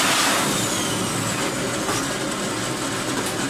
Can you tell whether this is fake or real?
real